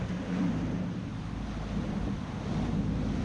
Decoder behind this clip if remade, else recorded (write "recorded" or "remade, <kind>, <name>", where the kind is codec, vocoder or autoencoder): recorded